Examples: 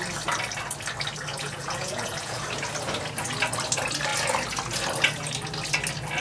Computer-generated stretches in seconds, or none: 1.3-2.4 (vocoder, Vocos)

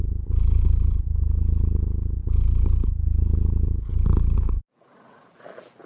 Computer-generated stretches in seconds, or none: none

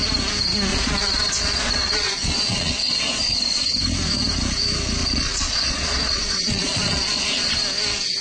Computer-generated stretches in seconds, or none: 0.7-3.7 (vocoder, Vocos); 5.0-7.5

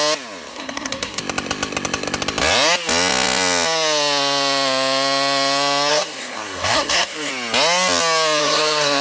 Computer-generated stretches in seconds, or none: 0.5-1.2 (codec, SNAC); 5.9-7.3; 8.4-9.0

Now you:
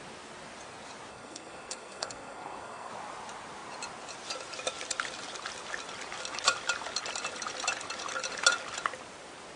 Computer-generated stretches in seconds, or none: 1.1-2.9 (codec, SNAC)

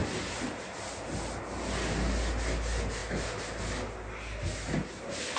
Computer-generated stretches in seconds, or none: none

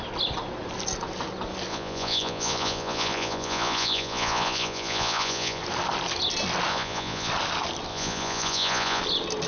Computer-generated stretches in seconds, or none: 1.7-5.6 (vocoder, Vocos); 6.7-7.3; 7.9-9.0